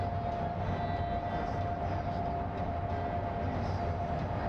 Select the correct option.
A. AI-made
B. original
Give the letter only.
B